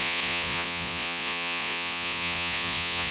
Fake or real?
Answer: fake